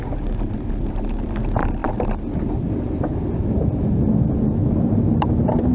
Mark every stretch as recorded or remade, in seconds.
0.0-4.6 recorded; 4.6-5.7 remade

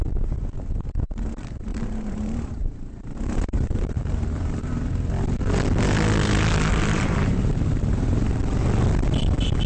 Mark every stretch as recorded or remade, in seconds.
0.0-1.7 recorded; 1.7-4.7 remade; 4.7-6.7 recorded; 6.7-8.4 remade; 8.4-9.7 recorded

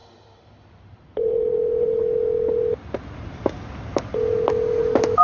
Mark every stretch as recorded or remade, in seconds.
0.0-2.0 remade; 2.0-5.2 recorded

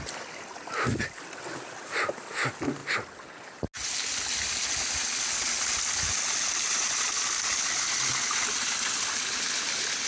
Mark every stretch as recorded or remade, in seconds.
0.0-10.1 recorded

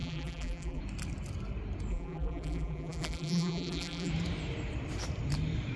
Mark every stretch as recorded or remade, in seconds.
0.0-0.8 remade; 0.8-1.9 recorded; 1.9-4.1 remade; 4.1-5.8 recorded

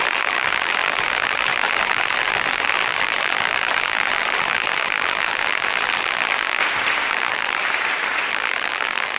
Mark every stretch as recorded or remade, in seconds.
0.0-6.6 remade; 6.6-7.1 recorded; 7.1-7.6 remade; 7.6-8.3 recorded; 8.3-9.2 remade

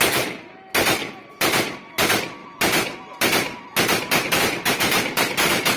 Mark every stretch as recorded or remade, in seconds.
0.0-5.8 remade

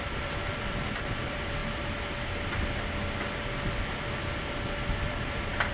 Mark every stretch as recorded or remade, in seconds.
0.0-1.6 remade; 1.6-5.0 recorded; 5.0-5.7 remade